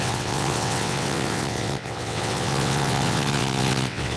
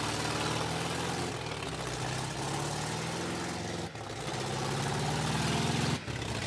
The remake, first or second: first